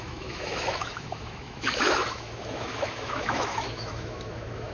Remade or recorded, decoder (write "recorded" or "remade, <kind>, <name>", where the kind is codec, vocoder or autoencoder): remade, autoencoder, DAC-VAE